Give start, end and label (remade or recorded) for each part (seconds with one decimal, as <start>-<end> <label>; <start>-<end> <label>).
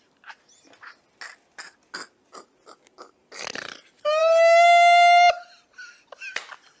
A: 0.0-6.8 recorded